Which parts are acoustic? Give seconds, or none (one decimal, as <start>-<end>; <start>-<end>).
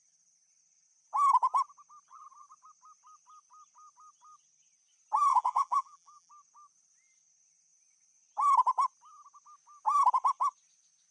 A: 0.0-5.3; 6.3-11.1